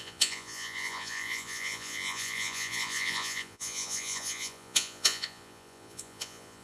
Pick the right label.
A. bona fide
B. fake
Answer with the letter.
B